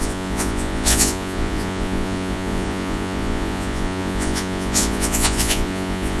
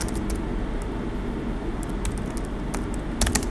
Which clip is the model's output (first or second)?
first